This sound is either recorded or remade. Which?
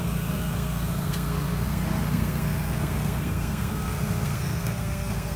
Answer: remade